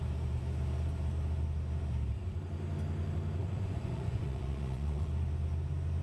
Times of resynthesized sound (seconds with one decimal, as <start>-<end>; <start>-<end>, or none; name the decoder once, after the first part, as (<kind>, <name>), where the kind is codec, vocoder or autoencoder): 3.4-5.1 (vocoder, Vocos)